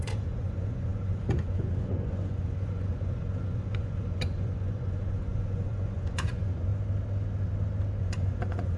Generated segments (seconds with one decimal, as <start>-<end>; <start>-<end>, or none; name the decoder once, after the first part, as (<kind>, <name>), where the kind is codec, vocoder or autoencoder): 0.0-6.7 (vocoder, Vocos); 8.0-8.8